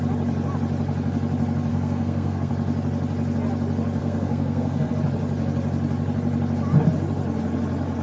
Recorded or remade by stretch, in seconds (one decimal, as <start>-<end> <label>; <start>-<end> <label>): 0.0-1.7 recorded; 1.7-2.5 remade; 2.5-4.0 recorded; 4.0-4.9 remade; 4.9-8.0 recorded